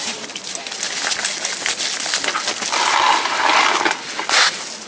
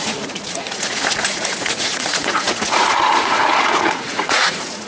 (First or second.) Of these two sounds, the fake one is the second